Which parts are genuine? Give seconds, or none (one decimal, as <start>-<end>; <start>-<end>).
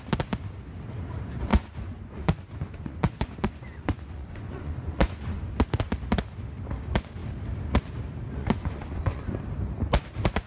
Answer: 0.0-1.5; 5.4-8.4; 9.2-10.5